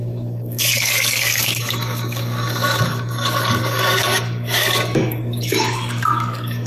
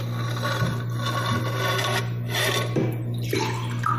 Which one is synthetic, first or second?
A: first